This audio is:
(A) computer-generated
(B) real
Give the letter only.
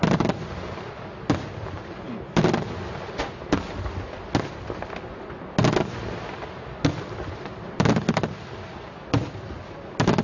B